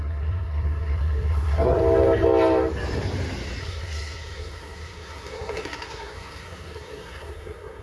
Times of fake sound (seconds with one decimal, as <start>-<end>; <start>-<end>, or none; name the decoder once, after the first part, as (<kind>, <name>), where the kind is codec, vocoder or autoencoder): 0.0-1.8 (codec, SNAC); 3.6-7.8